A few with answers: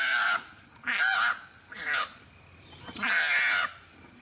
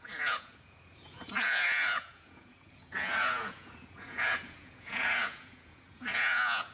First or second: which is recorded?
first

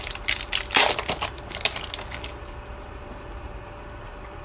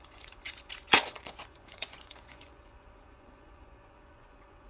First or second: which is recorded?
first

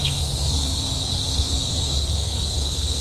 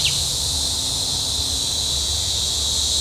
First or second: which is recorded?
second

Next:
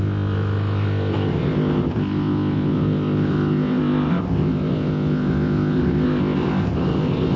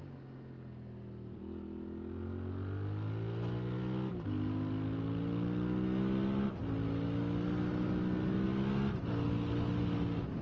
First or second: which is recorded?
second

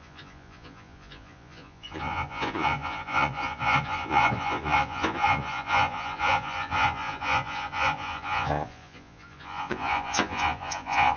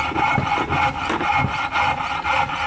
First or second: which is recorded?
second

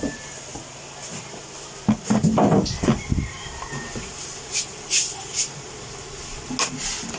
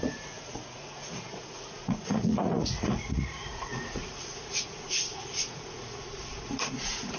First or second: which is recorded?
first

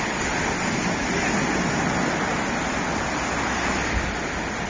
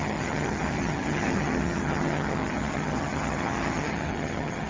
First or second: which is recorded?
first